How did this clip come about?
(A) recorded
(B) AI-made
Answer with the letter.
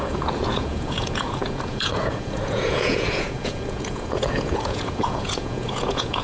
B